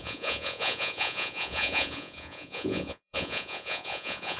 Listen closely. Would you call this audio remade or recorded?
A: remade